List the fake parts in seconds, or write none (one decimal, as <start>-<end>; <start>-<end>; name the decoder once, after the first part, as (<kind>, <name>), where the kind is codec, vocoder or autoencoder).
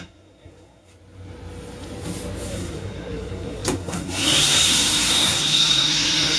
0.0-0.9 (codec, SNAC); 2.5-6.4